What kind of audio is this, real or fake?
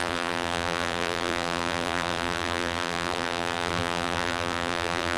fake